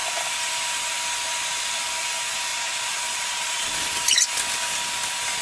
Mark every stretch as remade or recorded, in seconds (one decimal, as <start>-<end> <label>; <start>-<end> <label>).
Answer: 0.0-2.5 recorded; 2.5-3.7 remade; 3.7-5.4 recorded